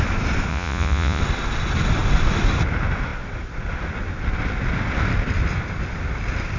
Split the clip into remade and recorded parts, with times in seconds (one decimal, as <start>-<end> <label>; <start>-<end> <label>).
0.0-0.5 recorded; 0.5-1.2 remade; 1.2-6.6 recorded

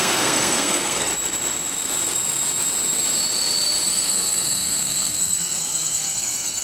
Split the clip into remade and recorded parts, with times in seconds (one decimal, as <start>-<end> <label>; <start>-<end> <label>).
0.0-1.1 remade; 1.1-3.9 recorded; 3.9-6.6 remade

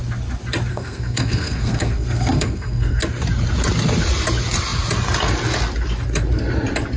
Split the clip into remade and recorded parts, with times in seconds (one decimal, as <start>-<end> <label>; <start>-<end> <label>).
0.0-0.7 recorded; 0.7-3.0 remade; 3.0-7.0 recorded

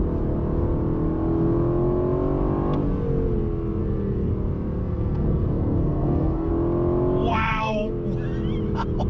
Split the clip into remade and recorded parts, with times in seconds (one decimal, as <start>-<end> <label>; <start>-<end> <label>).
0.0-3.8 recorded; 3.8-4.3 remade; 4.3-4.8 recorded; 4.8-6.5 remade; 6.5-7.3 recorded; 7.3-7.9 remade; 7.9-9.1 recorded

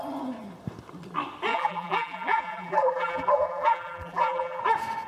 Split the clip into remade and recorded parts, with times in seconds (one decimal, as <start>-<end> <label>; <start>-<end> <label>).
0.0-1.5 recorded; 1.5-4.6 remade; 4.6-5.1 recorded